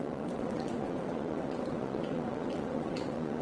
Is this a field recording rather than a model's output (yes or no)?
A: no